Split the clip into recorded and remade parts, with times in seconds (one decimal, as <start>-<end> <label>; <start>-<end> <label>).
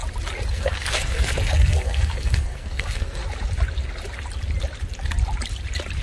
0.0-0.5 recorded; 0.5-3.2 remade; 3.2-6.0 recorded